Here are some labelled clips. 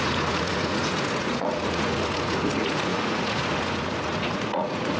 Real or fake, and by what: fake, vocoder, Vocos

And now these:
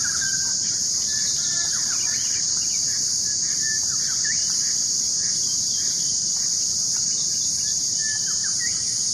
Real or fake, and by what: fake, vocoder, BigVGAN v2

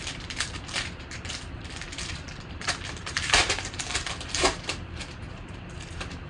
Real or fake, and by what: fake, vocoder, BigVGAN v2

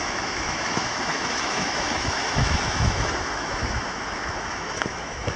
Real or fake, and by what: fake, autoencoder, DAC-VAE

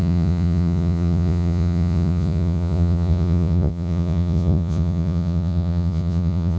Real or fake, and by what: fake, vocoder, Vocos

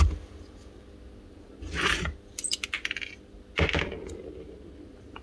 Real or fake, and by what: real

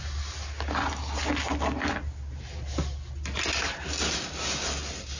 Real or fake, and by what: real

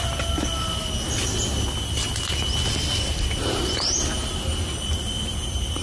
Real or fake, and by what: real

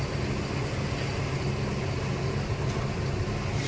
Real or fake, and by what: real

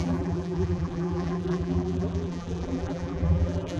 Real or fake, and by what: fake, vocoder, BigVGAN v2